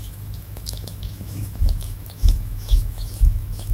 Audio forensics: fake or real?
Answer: fake